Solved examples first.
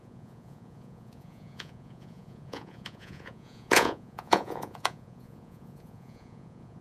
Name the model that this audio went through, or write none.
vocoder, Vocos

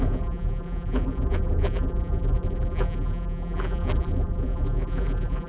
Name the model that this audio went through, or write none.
vocoder, BigVGAN v2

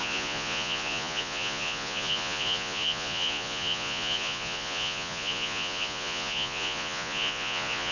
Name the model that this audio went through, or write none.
vocoder, Vocos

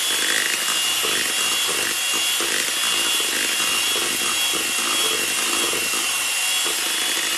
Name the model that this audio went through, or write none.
none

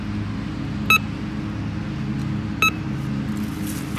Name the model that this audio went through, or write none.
none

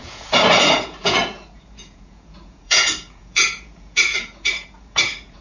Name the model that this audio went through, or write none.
vocoder, Vocos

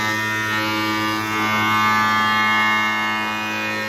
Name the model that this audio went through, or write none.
none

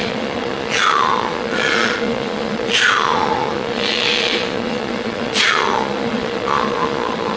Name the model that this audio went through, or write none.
vocoder, Vocos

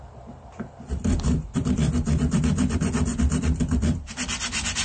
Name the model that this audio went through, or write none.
vocoder, BigVGAN v2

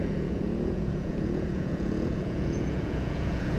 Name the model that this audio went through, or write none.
vocoder, Vocos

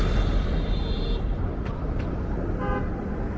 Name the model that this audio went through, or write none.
vocoder, BigVGAN v2